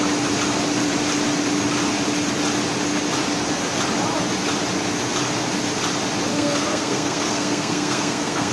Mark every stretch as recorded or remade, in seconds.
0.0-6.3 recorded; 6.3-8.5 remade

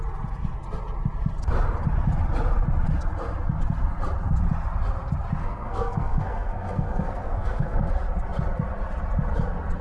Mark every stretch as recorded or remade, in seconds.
0.0-5.4 recorded; 5.4-7.9 remade; 7.9-9.8 recorded

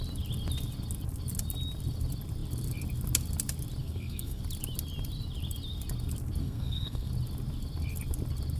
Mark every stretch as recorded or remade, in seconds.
0.0-3.8 recorded; 3.8-4.4 remade; 4.4-6.4 recorded; 6.4-7.1 remade; 7.1-8.6 recorded

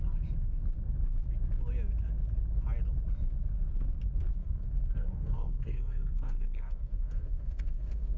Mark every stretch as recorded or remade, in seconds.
0.0-4.4 recorded; 4.4-8.2 remade

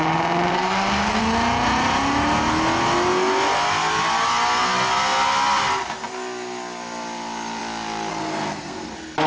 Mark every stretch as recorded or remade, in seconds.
0.0-0.5 recorded; 0.5-1.2 remade; 1.2-8.1 recorded; 8.1-8.9 remade; 8.9-9.3 recorded

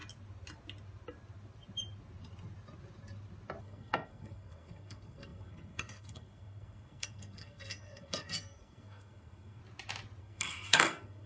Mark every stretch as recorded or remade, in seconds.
0.0-3.6 recorded; 3.6-9.6 remade; 9.6-10.2 recorded; 10.2-11.3 remade

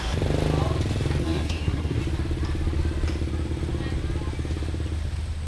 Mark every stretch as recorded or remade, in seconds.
0.0-1.2 recorded; 1.2-2.0 remade; 2.0-5.5 recorded

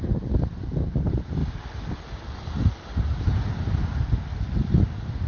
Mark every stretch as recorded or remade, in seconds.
0.0-5.3 recorded